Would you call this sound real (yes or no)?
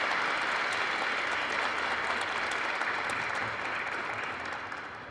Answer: yes